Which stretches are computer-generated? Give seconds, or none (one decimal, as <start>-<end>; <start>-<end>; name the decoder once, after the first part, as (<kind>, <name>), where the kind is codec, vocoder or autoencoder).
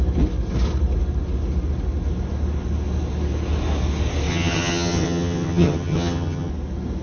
4.3-6.5 (vocoder, HiFi-GAN)